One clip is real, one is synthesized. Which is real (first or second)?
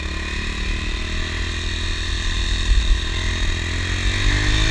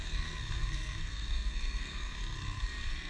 first